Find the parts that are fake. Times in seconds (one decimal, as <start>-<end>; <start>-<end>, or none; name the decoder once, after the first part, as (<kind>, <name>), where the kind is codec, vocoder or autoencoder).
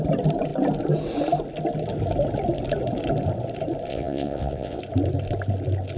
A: 3.9-4.8 (vocoder, WaveNeXt)